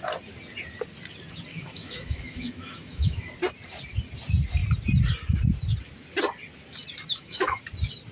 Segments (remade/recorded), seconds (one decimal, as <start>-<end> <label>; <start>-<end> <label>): 0.0-1.5 recorded; 1.5-3.3 remade; 3.3-7.1 recorded; 7.1-7.6 remade; 7.6-8.1 recorded